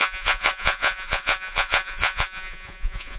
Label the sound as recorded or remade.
remade